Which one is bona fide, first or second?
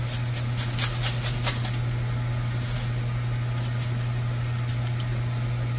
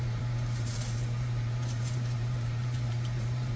first